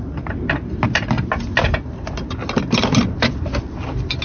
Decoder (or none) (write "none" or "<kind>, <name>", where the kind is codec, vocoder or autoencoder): none